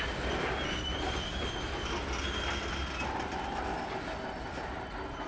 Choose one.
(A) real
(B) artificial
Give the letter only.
A